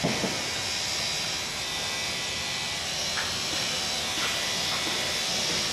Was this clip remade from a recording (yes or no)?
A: no